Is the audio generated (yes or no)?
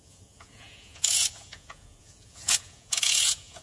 yes